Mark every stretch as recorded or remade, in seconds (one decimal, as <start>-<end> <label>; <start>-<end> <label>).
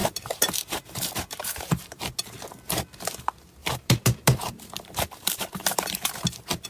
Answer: 0.0-2.0 remade; 2.0-3.6 recorded; 3.6-6.2 remade; 6.2-6.7 recorded